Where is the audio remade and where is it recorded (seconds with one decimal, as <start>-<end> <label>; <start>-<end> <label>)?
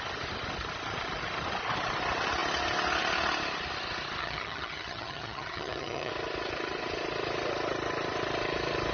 0.0-4.2 recorded; 4.2-6.1 remade; 6.1-8.9 recorded